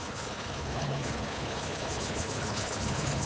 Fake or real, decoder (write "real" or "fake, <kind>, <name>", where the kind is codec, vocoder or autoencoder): fake, codec, HILCodec